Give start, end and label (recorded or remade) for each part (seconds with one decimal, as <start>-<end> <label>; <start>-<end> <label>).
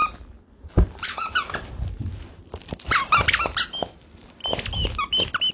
0.0-5.5 recorded